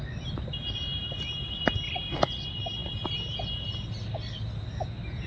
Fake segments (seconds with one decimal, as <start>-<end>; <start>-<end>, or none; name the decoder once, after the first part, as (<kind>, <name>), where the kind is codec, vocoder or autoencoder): none